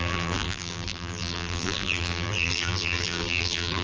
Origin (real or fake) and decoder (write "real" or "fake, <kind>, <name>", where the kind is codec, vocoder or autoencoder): fake, vocoder, BigVGAN v2